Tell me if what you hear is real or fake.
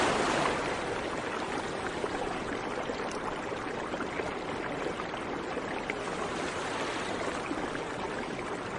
real